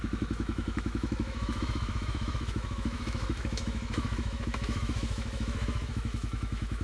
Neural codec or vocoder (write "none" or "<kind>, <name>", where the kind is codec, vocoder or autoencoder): autoencoder, DAC-VAE